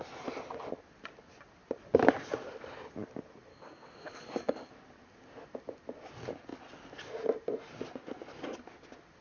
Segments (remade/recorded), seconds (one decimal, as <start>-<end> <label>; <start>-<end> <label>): 0.0-3.5 recorded; 3.5-4.7 remade; 4.7-9.2 recorded